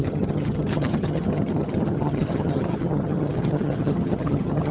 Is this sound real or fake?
fake